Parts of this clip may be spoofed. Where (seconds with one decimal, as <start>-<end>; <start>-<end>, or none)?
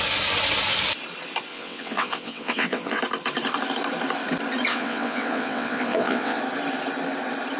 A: 1.5-3.0; 4.7-6.4